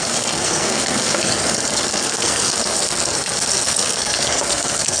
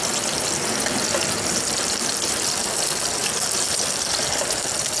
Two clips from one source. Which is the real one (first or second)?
second